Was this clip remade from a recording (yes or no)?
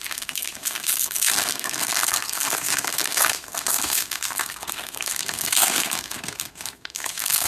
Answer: yes